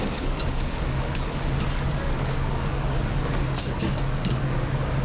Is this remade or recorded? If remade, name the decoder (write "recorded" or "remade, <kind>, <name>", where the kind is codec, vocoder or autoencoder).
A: remade, codec, DAC